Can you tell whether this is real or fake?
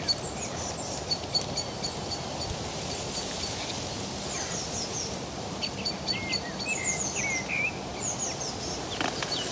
real